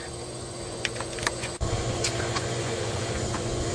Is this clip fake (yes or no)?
yes